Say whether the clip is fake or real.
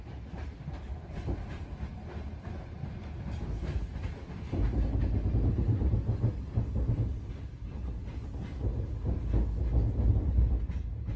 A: real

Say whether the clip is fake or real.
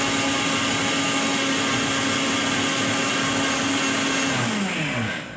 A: real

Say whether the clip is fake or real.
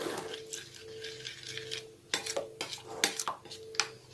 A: real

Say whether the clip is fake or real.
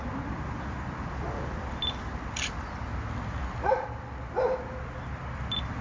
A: real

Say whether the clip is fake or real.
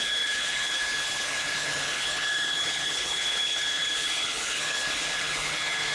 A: fake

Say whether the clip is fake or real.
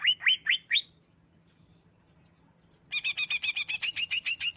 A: real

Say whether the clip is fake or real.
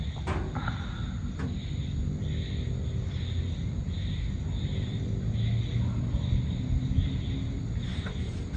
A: real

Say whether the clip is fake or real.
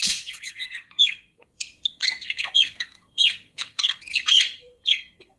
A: fake